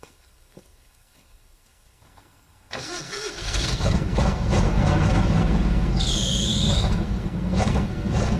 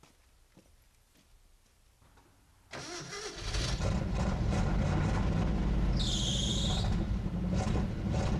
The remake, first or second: first